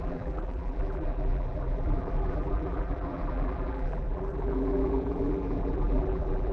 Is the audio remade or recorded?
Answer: remade